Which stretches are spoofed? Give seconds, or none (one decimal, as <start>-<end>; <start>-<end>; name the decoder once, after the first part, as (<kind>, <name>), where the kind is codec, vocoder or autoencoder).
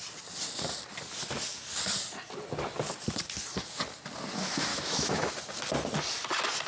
4.7-5.3 (autoencoder, DAC-VAE)